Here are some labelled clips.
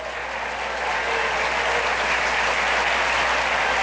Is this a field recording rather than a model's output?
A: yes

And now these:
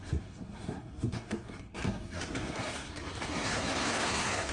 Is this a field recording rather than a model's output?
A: no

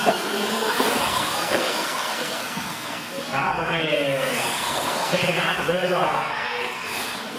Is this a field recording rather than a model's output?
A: no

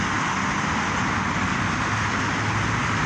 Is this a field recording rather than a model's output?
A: yes